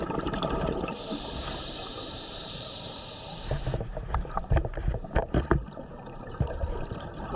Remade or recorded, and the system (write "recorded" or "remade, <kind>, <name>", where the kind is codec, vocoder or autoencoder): remade, vocoder, BigVGAN v2